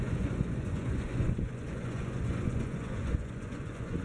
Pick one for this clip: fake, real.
fake